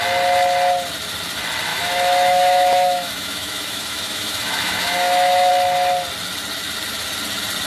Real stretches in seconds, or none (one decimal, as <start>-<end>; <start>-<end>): 0.0-1.7; 5.5-7.7